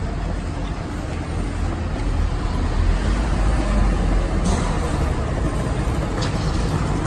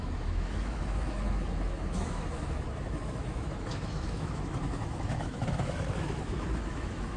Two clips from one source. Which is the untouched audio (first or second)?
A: first